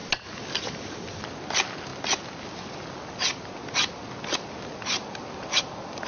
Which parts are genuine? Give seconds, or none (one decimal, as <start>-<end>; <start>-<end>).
0.0-6.1